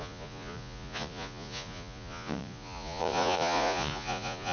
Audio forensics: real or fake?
fake